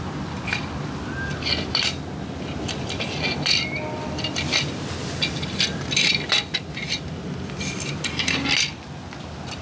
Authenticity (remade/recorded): recorded